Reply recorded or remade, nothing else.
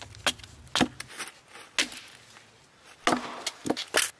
recorded